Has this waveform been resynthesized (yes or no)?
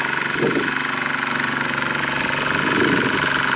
no